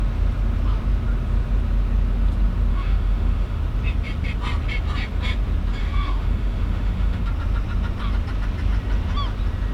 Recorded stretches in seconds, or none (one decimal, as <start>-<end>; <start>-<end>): 0.0-2.7; 3.6-5.8; 7.2-9.7